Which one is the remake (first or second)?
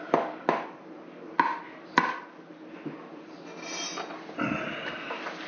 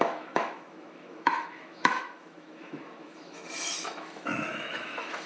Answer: second